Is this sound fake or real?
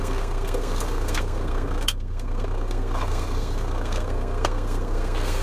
fake